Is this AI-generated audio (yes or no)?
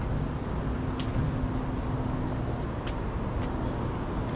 no